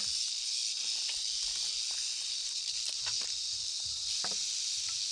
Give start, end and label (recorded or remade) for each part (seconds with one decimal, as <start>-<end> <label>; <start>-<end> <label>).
0.0-5.1 recorded